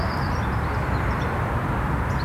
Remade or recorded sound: remade